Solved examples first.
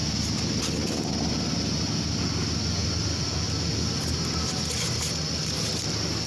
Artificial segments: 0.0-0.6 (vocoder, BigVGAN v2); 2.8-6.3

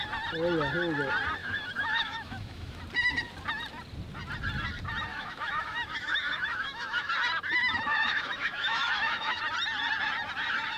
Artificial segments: 1.4-2.8 (autoencoder, DAC-VAE); 5.1-7.1; 7.6-9.4

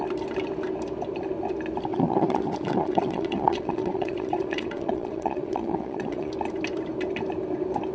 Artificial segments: 1.9-6.3 (vocoder, Vocos)

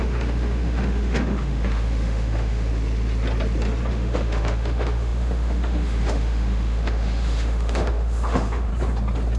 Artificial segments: 0.0-2.7 (autoencoder, DAC-VAE); 3.9-8.7

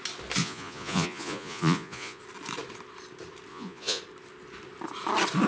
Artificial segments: 0.4-2.2 (vocoder, Vocos); 3.5-4.0

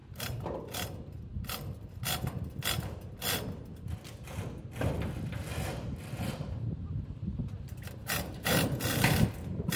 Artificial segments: 0.0-0.6 (vocoder, BigVGAN v2); 8.0-8.7

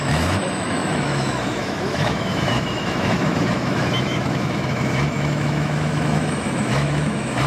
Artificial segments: 0.0-7.5 (autoencoder, DAC-VAE)

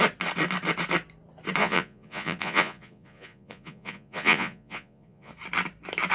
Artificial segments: 1.6-5.3 (vocoder, Vocos)